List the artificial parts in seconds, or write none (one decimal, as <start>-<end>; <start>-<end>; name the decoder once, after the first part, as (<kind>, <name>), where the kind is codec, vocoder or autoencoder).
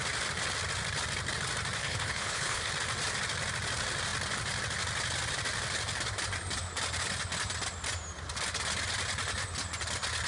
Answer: 1.8-2.7 (codec, HILCodec)